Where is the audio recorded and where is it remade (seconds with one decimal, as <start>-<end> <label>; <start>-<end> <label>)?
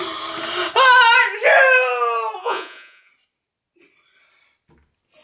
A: 0.0-2.4 recorded; 2.4-3.1 remade; 3.1-5.2 recorded